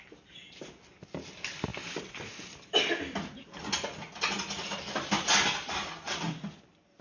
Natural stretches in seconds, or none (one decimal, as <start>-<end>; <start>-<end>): 0.0-7.0